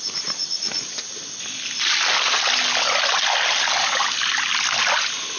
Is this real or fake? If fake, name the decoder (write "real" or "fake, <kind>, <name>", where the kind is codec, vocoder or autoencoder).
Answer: real